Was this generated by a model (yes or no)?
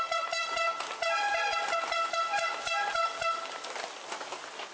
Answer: no